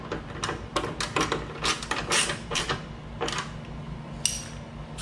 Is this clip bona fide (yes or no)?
yes